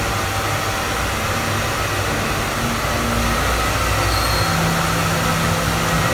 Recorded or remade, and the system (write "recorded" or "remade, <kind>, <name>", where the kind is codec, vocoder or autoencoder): recorded